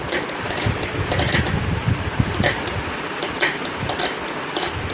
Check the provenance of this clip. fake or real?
real